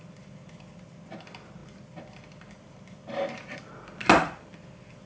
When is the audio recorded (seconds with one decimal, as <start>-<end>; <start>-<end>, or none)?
0.0-5.1